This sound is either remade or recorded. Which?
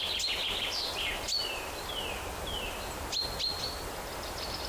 recorded